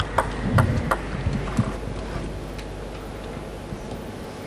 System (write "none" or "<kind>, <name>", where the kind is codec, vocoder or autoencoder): none